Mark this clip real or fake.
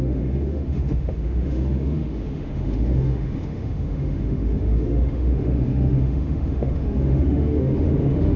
fake